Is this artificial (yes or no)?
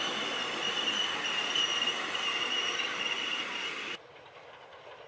no